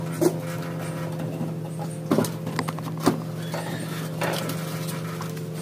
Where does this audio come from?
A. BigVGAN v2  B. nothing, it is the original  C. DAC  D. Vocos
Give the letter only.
B